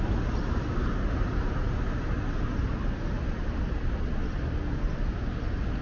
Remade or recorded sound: recorded